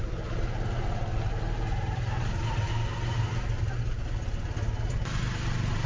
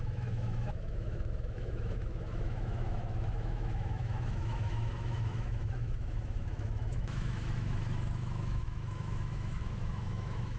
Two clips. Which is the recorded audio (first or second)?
first